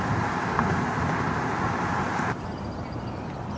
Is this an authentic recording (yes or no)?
yes